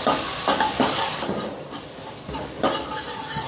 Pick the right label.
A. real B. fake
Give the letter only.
A